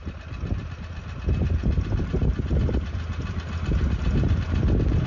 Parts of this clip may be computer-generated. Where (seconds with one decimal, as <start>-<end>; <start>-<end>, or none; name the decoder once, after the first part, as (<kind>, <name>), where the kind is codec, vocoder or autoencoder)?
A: none